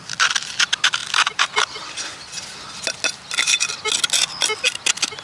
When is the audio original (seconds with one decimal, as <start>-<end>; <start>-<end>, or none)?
0.0-5.2